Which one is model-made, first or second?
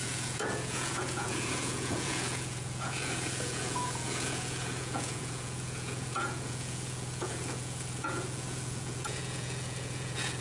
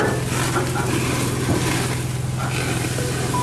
first